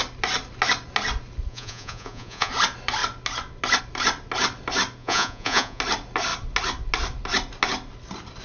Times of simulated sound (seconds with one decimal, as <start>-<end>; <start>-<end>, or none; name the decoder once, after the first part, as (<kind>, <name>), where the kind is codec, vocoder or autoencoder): 1.5-2.5 (vocoder, Vocos); 5.0-5.8